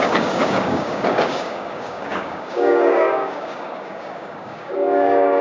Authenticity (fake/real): fake